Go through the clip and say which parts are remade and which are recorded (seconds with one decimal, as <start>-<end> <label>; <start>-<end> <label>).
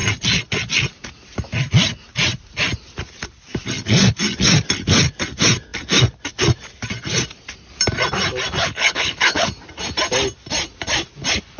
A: 0.0-8.6 recorded; 8.6-9.5 remade; 9.5-11.6 recorded